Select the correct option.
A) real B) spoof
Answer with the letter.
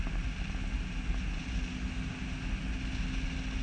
A